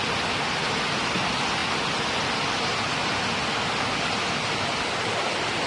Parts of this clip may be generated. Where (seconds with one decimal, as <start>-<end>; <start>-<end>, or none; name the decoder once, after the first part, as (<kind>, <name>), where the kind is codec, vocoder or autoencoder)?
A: none